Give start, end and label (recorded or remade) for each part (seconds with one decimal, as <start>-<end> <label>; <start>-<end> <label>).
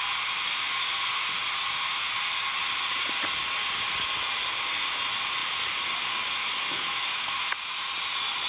0.0-6.4 recorded; 6.4-7.4 remade; 7.4-8.5 recorded